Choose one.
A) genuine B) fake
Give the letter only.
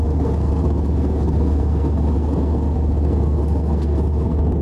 B